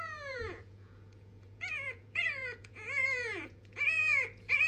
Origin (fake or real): fake